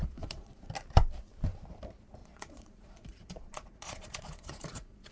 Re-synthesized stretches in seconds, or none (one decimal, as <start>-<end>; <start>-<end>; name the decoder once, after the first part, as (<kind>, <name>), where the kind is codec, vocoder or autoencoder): 0.0-0.7 (vocoder, Vocos); 2.2-5.1